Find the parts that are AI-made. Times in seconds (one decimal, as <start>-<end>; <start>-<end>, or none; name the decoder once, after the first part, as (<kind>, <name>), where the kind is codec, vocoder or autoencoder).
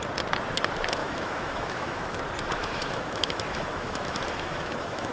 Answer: 1.0-2.2 (autoencoder, DAC-VAE); 2.6-5.1